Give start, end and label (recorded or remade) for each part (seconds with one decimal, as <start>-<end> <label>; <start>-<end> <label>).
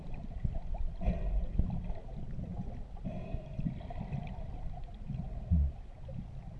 0.0-6.6 recorded